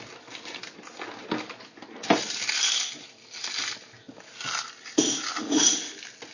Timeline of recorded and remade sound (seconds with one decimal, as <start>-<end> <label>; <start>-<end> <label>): 0.0-6.3 recorded